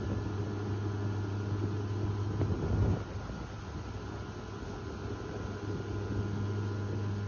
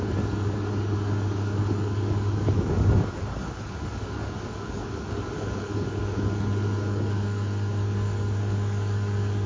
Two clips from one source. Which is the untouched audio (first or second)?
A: first